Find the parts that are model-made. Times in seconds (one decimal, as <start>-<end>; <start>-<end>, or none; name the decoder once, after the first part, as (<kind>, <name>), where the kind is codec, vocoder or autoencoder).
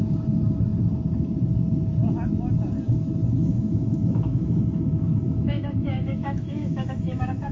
3.4-7.5 (autoencoder, DAC-VAE)